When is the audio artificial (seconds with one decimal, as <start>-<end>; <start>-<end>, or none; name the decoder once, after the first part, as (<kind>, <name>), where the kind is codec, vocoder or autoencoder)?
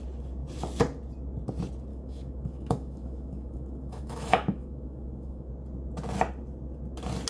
1.9-5.5 (autoencoder, DAC-VAE)